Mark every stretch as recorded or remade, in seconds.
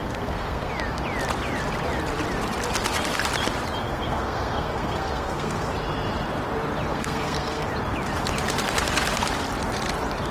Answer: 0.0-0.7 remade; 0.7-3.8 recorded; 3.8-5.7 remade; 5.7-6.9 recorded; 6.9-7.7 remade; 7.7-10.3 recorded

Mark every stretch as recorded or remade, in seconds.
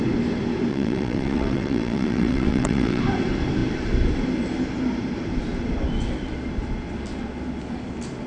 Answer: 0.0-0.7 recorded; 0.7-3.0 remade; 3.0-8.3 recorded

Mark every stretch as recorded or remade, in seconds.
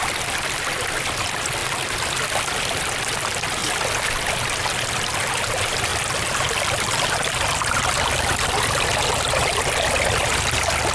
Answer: 0.0-3.6 recorded; 3.6-4.9 remade; 4.9-5.9 recorded; 5.9-8.6 remade; 8.6-10.9 recorded